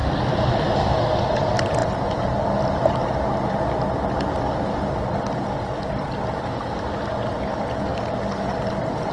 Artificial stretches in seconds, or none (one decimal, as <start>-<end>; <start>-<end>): none